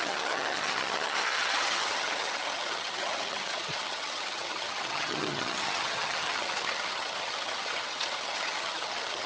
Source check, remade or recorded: remade